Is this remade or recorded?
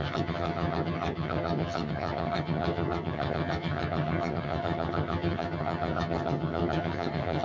remade